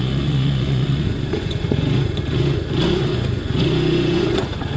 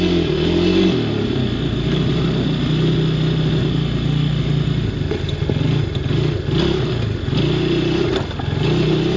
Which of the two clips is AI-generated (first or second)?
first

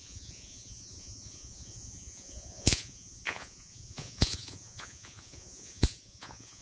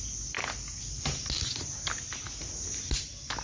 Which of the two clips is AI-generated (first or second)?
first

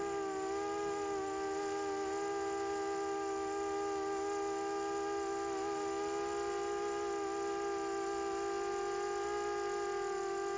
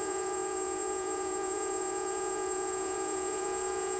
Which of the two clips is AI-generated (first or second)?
second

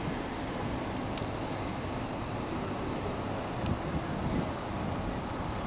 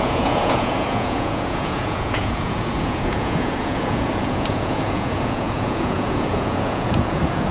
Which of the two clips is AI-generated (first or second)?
second